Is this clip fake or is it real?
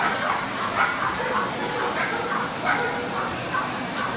real